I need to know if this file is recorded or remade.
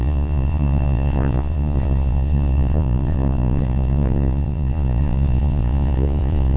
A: remade